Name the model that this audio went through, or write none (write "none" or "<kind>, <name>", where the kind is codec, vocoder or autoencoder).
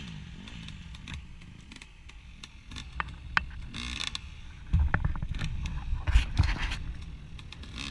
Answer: none